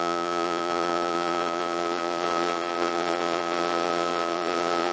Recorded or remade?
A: remade